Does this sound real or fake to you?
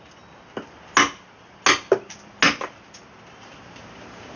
real